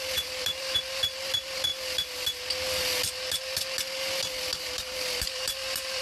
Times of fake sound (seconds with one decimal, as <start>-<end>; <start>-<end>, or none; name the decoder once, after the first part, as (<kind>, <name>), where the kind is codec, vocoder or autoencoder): 0.0-1.7 (vocoder, BigVGAN v2); 4.6-6.0